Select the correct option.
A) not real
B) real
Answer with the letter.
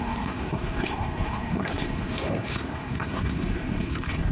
A